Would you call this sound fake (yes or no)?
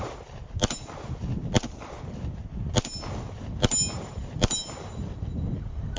no